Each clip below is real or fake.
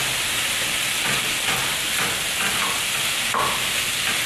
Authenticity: real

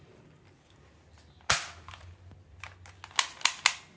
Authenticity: real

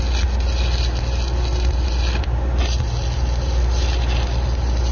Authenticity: real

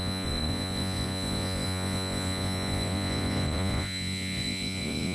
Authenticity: fake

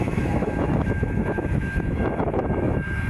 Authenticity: fake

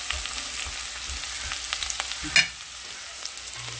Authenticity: real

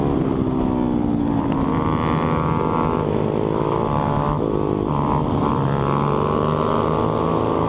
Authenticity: real